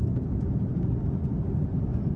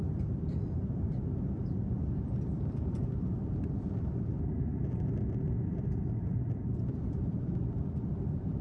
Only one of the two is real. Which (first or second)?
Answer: first